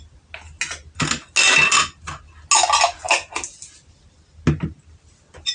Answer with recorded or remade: recorded